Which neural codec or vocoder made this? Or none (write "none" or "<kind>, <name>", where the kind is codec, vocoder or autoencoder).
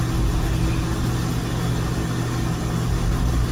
none